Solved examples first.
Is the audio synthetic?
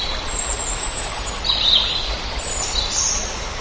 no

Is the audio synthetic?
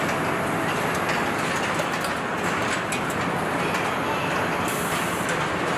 no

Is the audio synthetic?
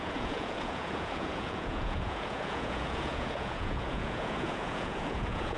yes